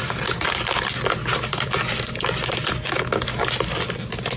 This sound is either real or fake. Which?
real